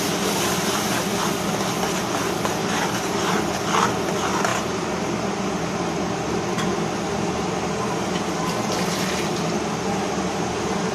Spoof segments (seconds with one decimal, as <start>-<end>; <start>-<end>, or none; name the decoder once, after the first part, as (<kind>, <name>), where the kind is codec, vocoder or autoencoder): 2.6-3.4 (vocoder, BigVGAN v2); 4.5-5.6